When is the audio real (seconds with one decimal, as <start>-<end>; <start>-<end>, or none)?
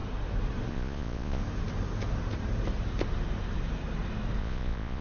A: 0.0-0.7; 1.4-4.4